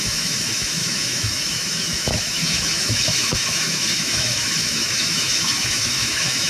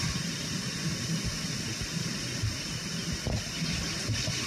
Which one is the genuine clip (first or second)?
second